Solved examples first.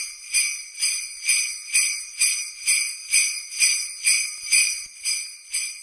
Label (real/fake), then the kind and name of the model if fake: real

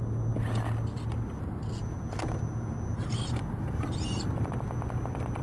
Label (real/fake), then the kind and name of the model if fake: real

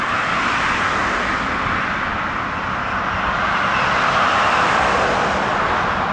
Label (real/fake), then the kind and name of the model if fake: real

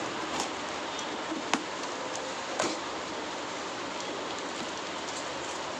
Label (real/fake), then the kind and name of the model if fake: real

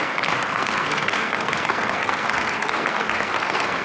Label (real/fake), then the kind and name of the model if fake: fake, codec, SNAC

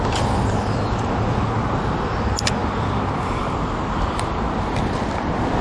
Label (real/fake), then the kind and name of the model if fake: real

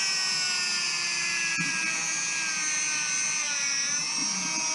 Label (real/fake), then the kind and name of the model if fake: real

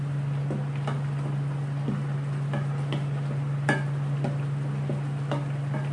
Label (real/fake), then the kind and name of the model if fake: real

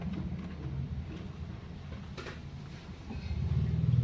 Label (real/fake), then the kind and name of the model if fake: real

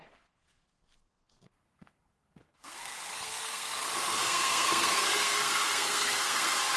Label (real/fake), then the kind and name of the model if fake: fake, codec, SNAC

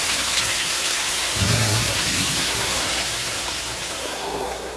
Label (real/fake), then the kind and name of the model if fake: fake, codec, SNAC